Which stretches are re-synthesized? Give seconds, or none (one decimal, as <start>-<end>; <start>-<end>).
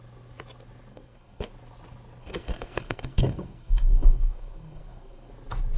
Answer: 0.9-1.5; 2.2-5.3